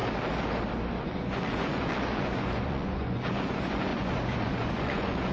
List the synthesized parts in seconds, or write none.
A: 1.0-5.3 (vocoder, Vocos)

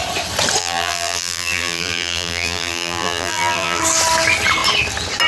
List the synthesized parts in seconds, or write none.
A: 0.6-3.8 (vocoder, BigVGAN v2)